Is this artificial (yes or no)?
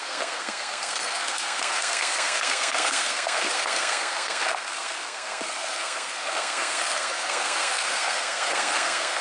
yes